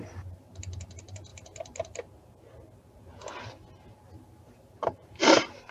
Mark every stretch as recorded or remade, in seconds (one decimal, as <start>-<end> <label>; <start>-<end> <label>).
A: 0.0-1.3 remade; 1.3-4.7 recorded; 4.7-5.7 remade